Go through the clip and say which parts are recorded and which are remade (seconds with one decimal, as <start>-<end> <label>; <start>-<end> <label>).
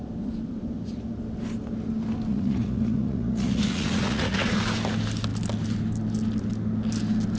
0.0-2.3 recorded; 2.3-4.6 remade; 4.6-7.4 recorded